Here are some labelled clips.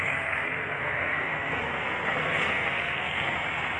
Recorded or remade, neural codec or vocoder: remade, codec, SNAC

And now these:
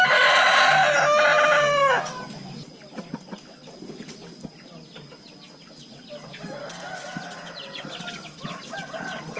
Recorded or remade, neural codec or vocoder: recorded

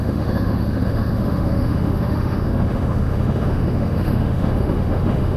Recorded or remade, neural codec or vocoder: remade, autoencoder, DAC-VAE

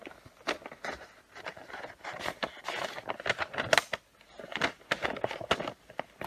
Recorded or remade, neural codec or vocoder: recorded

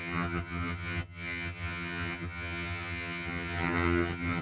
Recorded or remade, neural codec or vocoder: remade, vocoder, HiFi-GAN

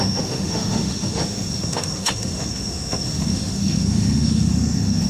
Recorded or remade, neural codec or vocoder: remade, autoencoder, DAC-VAE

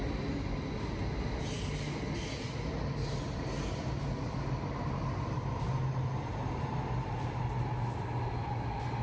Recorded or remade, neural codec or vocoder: recorded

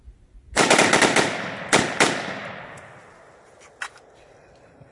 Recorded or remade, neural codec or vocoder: recorded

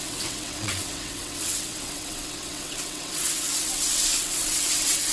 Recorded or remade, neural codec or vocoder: remade, vocoder, WaveNeXt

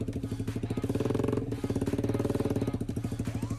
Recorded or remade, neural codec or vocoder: recorded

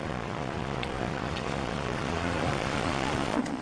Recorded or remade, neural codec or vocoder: remade, vocoder, Vocos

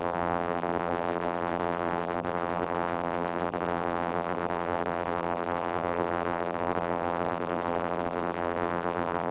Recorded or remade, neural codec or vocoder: remade, vocoder, BigVGAN v2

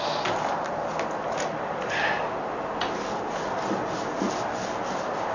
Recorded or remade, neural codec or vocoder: recorded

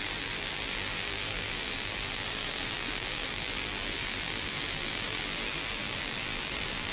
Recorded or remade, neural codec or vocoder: remade, vocoder, BigVGAN v2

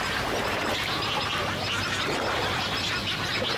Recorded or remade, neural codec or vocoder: recorded